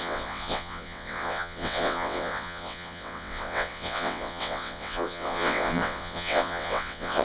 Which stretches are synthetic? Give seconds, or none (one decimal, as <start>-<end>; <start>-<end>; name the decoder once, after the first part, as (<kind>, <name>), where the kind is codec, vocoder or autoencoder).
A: 0.0-7.2 (vocoder, WaveNeXt)